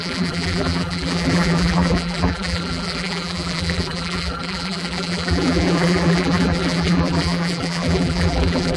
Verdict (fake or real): fake